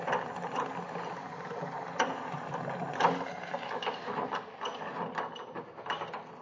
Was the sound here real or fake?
real